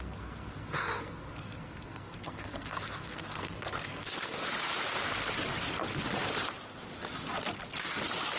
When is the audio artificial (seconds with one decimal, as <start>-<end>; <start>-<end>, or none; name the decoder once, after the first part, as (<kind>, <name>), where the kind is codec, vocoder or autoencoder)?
0.0-4.5 (codec, SNAC)